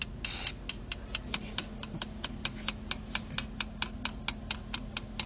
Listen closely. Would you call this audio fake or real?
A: real